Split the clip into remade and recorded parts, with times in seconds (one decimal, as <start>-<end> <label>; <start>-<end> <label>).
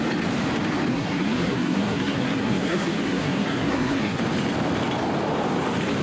0.0-0.9 recorded; 0.9-4.2 remade; 4.2-6.0 recorded